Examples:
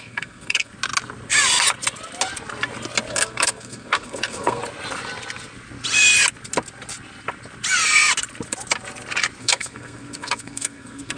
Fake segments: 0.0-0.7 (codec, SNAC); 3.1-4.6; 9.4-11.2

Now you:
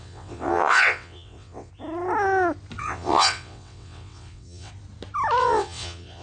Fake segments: 0.0-1.7 (vocoder, WaveNeXt); 2.8-4.7; 5.4-6.2

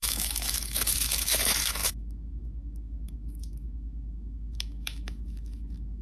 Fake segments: 0.0-6.0 (autoencoder, DAC-VAE)

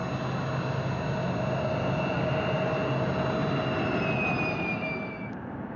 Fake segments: 3.5-5.8 (vocoder, BigVGAN v2)

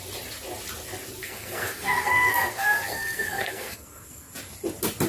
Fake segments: 1.2-4.3 (codec, SNAC)

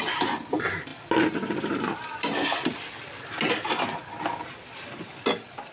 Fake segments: none